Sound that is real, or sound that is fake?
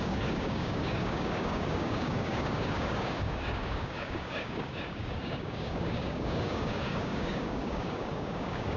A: fake